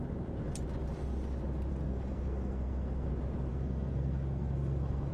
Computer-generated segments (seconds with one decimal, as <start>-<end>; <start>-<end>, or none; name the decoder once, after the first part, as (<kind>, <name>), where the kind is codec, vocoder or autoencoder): 1.7-3.1 (codec, SNAC); 3.5-5.1